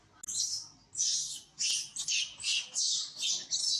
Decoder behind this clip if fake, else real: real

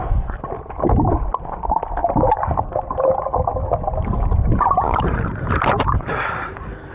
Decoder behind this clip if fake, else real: real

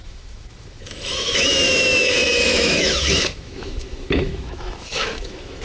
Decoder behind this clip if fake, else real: fake, autoencoder, DAC-VAE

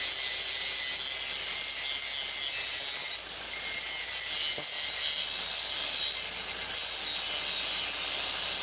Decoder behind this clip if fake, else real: real